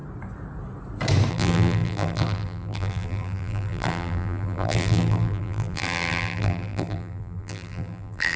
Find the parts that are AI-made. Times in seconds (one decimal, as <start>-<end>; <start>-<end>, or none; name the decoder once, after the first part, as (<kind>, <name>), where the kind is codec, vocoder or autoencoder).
1.3-8.4 (vocoder, BigVGAN v2)

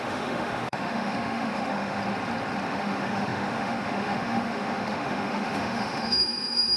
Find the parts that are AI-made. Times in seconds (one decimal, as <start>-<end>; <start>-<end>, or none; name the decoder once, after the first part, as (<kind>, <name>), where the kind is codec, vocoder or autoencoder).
0.0-2.0 (autoencoder, DAC-VAE); 2.7-6.8

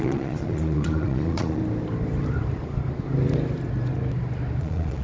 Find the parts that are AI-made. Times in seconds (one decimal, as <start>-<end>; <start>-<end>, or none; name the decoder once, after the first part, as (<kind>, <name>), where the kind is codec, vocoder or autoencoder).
0.0-1.6 (vocoder, Vocos); 4.6-5.0

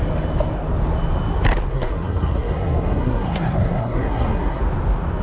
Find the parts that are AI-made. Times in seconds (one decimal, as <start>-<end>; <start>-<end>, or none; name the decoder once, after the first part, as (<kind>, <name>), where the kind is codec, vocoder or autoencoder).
1.7-4.6 (codec, SNAC)

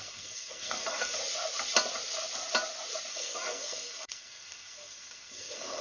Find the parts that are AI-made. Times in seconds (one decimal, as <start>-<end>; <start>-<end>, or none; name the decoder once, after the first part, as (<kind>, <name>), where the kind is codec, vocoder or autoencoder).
0.0-1.2 (codec, SNAC); 3.1-5.8

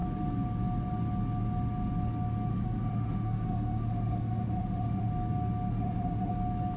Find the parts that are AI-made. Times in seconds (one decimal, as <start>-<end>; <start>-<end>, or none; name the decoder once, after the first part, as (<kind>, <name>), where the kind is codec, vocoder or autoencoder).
2.5-5.1 (autoencoder, DAC-VAE); 5.7-6.3